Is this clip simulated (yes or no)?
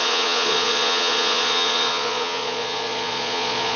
yes